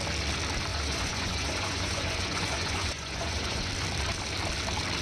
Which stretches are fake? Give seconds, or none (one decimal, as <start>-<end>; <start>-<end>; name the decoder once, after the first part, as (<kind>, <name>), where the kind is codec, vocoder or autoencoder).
0.7-3.7 (vocoder, Vocos)